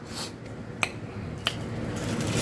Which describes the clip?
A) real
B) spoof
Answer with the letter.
A